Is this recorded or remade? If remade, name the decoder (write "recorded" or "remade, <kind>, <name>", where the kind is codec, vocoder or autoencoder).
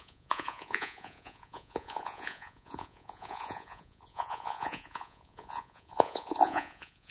remade, vocoder, Vocos